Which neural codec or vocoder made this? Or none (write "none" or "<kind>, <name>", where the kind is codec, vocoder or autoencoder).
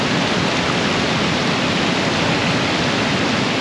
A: none